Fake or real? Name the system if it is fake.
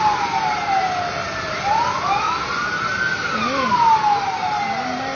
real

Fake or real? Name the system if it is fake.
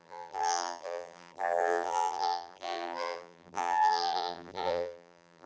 fake, vocoder, BigVGAN v2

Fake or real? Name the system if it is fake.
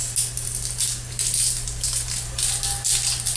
real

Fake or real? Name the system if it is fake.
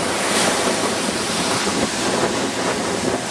real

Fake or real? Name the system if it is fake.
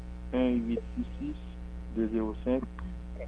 real